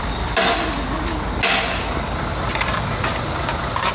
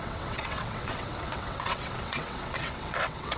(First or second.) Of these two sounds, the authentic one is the first